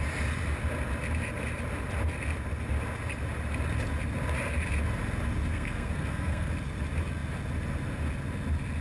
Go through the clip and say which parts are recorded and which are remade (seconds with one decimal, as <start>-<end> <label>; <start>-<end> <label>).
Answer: 0.0-5.5 recorded; 5.5-6.5 remade; 6.5-8.8 recorded